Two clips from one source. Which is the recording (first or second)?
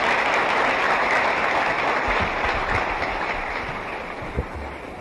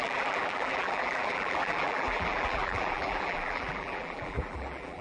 first